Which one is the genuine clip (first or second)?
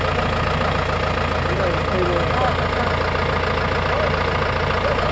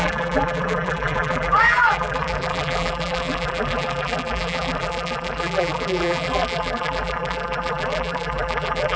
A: first